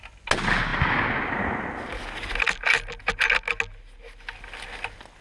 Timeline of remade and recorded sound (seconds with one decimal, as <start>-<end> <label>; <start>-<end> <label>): 0.0-5.2 recorded